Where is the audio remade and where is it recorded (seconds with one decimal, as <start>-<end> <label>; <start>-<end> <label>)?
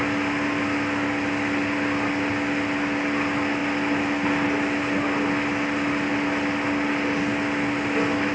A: 0.0-8.3 recorded